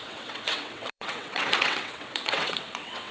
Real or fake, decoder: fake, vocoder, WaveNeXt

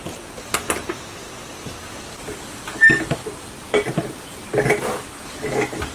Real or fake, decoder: real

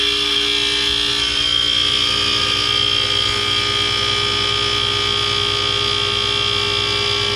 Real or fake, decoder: real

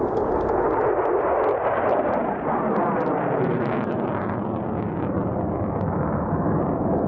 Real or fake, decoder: real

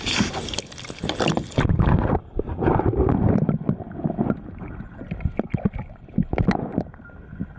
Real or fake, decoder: real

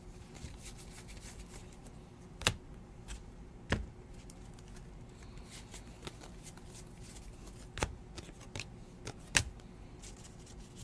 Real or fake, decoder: real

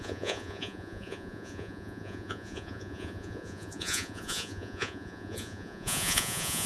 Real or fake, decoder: fake, vocoder, Vocos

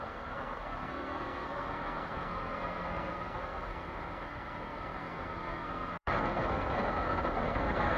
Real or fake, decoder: fake, codec, SNAC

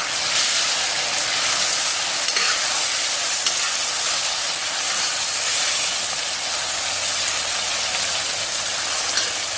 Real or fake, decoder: real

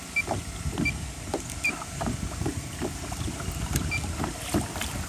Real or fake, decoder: real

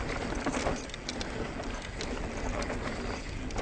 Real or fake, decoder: real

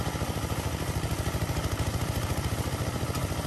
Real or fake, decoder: real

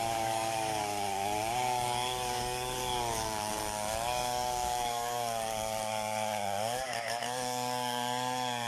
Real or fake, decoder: fake, codec, DAC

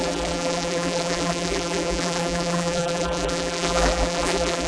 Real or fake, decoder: fake, vocoder, BigVGAN v2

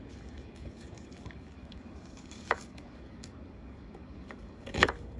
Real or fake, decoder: fake, codec, DAC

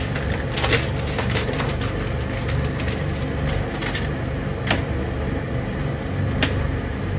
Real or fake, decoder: real